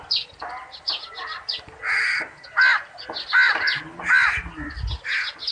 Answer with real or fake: real